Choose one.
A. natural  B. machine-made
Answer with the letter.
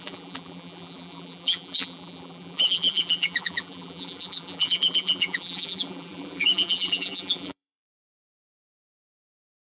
B